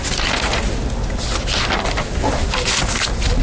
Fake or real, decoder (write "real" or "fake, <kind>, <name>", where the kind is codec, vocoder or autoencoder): real